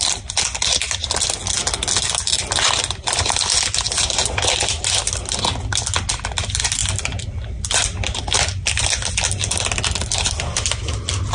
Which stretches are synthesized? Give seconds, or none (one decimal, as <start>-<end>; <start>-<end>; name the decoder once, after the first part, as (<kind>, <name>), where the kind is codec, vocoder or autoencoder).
none